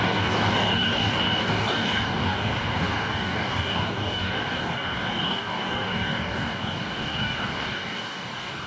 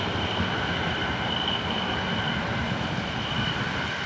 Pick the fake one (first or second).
first